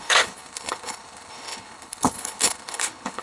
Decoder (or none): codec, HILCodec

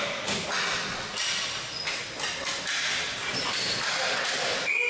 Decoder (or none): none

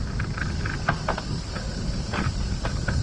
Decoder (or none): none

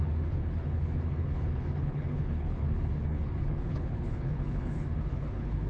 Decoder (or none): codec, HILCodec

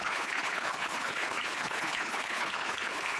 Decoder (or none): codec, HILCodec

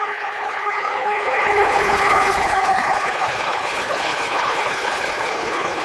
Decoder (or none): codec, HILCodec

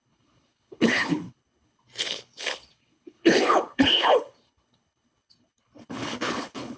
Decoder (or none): codec, HILCodec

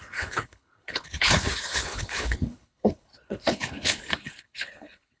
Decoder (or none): codec, HILCodec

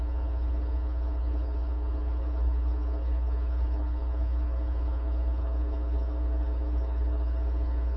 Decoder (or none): codec, HILCodec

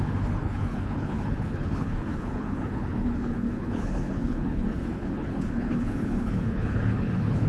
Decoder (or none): codec, HILCodec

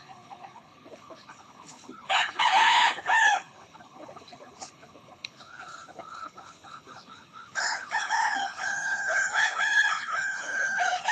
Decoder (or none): codec, HILCodec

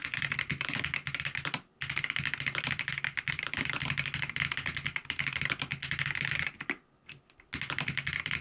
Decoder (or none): none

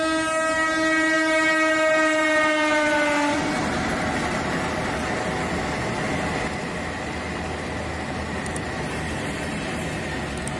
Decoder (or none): none